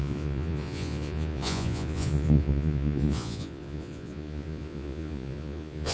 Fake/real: fake